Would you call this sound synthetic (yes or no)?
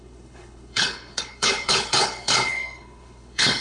yes